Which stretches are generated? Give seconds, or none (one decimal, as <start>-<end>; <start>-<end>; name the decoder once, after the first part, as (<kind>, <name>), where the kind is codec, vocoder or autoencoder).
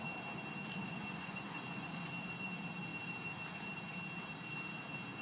0.8-2.1 (vocoder, Vocos)